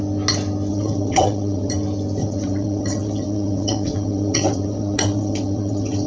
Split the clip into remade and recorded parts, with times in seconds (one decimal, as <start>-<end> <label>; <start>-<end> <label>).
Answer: 0.0-0.7 recorded; 0.7-1.7 remade; 1.7-2.2 recorded; 2.2-6.1 remade